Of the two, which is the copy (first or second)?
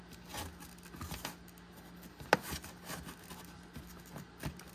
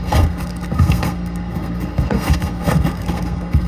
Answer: second